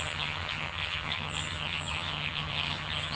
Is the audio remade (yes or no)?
yes